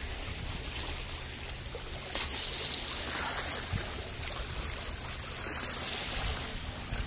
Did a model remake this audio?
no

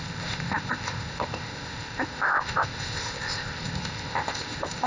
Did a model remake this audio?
yes